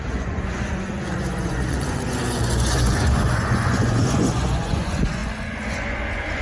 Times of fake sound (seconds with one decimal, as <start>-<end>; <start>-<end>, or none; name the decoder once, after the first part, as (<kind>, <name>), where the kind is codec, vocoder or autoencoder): 0.0-6.4 (vocoder, Vocos)

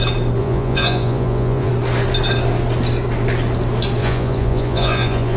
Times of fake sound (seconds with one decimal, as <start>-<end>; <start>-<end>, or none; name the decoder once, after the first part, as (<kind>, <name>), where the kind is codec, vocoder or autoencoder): 0.4-1.7 (vocoder, Vocos); 4.0-5.4

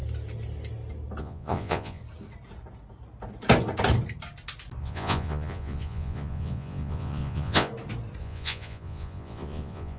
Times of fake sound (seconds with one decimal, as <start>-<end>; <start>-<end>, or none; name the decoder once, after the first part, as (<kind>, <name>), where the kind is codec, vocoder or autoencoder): 1.2-2.0 (vocoder, Vocos); 4.8-7.7; 8.2-10.0

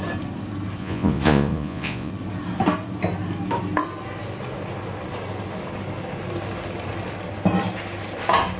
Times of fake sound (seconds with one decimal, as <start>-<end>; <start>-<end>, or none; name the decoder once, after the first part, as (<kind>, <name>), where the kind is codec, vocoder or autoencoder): 0.8-2.1 (vocoder, Vocos)

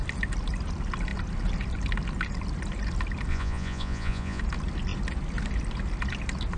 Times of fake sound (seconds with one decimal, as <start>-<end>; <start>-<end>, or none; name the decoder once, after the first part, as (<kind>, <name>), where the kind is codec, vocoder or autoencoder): 3.3-4.4 (vocoder, Vocos)

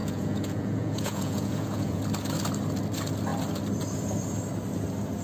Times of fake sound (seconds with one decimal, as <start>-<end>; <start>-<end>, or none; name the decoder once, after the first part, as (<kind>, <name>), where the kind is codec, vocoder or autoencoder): 0.0-2.0 (vocoder, Vocos)

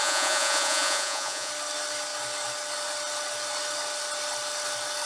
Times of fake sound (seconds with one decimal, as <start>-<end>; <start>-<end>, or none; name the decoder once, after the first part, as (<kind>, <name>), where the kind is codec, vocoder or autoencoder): 0.0-1.5 (vocoder, Vocos)

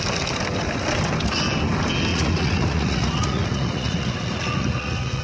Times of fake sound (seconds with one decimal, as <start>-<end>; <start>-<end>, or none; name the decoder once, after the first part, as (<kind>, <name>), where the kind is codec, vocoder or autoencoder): 2.1-5.2 (vocoder, Vocos)